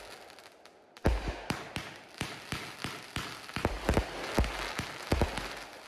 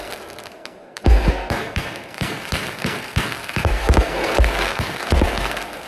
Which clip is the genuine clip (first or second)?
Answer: first